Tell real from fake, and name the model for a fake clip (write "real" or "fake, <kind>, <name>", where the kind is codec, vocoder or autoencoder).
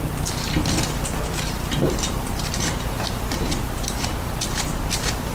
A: fake, vocoder, BigVGAN v2